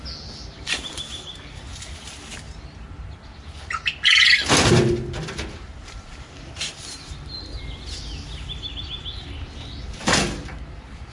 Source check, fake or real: real